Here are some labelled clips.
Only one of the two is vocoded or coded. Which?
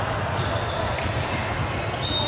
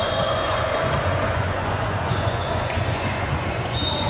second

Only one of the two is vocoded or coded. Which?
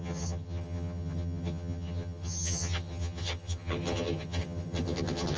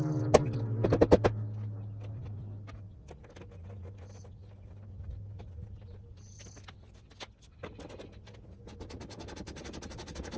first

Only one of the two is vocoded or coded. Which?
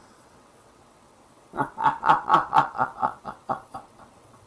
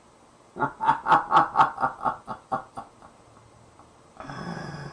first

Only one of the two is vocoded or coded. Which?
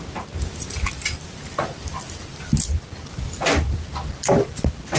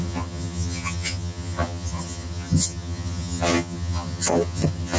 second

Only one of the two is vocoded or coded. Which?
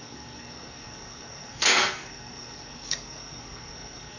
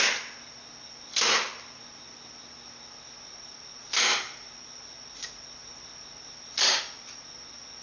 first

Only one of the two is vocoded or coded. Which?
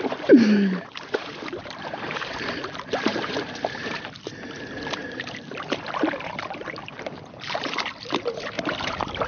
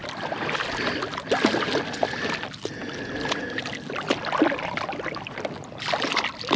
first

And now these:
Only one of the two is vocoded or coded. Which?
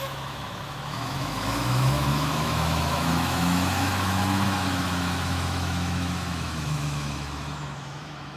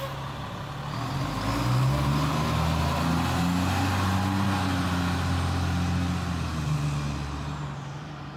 first